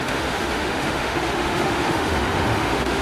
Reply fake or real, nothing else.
fake